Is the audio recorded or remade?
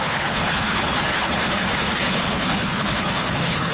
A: remade